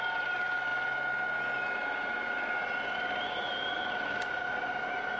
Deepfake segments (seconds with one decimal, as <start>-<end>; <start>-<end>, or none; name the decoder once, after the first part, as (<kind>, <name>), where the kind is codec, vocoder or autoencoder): none